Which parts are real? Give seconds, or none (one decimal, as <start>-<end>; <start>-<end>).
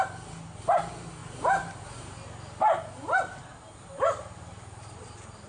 0.0-5.5